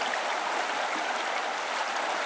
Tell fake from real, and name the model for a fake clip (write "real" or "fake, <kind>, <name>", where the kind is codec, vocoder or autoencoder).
real